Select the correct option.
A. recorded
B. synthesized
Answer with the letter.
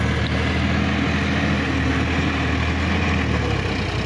A